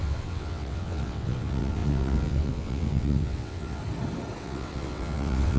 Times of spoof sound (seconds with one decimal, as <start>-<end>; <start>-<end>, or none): 0.0-3.8; 4.4-5.6